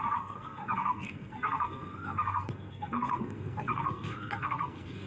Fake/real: fake